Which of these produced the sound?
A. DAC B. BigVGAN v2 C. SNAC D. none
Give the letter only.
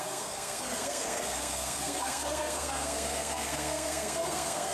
C